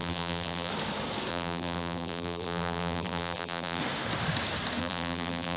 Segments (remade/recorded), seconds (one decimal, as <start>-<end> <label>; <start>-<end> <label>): 0.0-0.7 remade; 0.7-1.3 recorded; 1.3-3.8 remade; 3.8-4.8 recorded; 4.8-5.6 remade